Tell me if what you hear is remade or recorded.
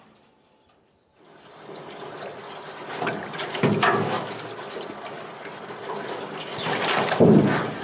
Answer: recorded